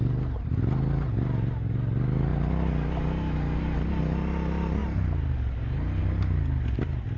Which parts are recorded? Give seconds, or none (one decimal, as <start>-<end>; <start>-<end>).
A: 0.0-7.2